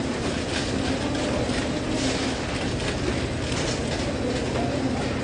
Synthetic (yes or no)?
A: no